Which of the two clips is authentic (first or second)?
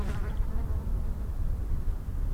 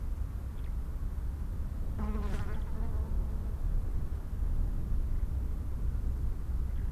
second